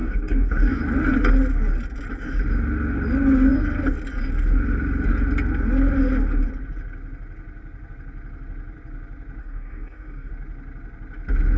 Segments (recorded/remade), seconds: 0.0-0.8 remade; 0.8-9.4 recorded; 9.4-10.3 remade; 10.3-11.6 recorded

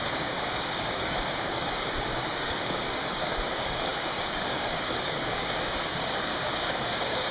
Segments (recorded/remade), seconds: 0.0-7.3 remade